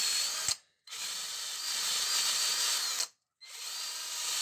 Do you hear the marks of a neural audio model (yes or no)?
no